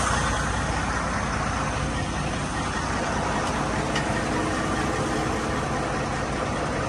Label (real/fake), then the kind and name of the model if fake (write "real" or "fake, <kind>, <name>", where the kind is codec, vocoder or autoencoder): real